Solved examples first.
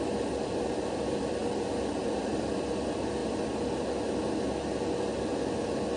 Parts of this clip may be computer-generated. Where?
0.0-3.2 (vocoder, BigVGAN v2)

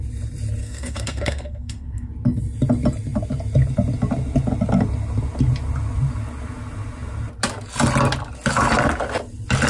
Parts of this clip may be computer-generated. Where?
0.6-2.1 (codec, SNAC)

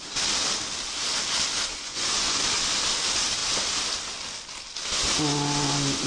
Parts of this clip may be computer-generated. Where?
1.7-2.4 (vocoder, Vocos)

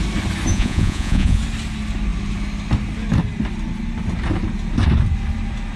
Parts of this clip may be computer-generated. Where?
0.5-1.4 (vocoder, Vocos)

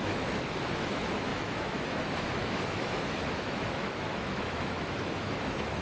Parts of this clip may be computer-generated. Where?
0.0-5.8 (autoencoder, DAC-VAE)